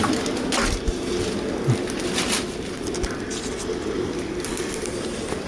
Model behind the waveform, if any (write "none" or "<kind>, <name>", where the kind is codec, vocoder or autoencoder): none